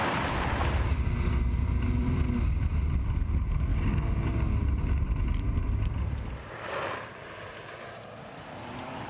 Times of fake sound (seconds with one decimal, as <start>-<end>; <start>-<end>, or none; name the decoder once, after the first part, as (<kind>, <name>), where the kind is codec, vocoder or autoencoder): 3.7-4.3 (codec, DAC)